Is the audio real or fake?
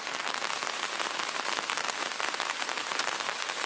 real